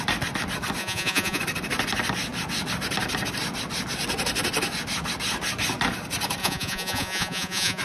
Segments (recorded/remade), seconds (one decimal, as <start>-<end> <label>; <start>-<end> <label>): 0.0-0.8 recorded; 0.8-1.4 remade; 1.4-6.4 recorded; 6.4-7.8 remade